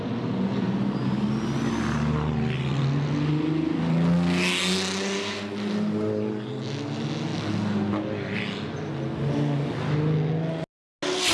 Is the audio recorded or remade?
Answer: recorded